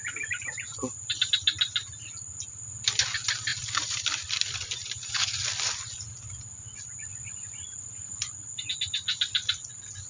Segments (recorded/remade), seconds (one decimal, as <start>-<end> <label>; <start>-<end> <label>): 0.0-0.7 recorded; 0.7-1.3 remade; 1.3-3.5 recorded; 3.5-5.1 remade; 5.1-7.1 recorded; 7.1-9.5 remade; 9.5-10.1 recorded